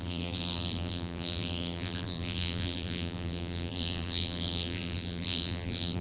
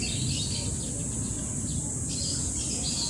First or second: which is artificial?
first